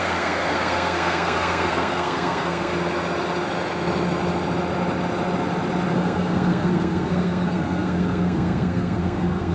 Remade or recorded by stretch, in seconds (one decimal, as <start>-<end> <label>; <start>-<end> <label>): 0.0-2.7 remade; 2.7-5.9 recorded; 5.9-9.5 remade